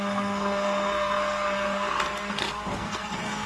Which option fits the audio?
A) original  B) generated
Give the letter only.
B